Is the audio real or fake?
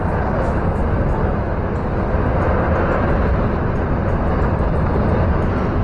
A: real